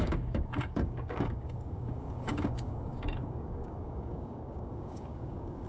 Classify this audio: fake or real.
fake